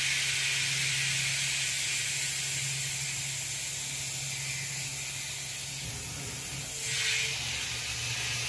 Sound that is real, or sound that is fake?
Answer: real